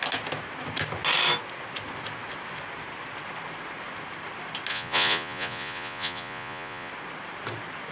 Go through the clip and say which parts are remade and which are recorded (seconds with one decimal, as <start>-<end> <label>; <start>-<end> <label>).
0.0-4.7 recorded; 4.7-6.9 remade; 6.9-7.9 recorded